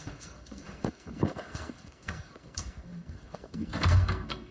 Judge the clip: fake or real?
fake